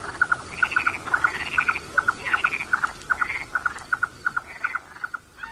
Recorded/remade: recorded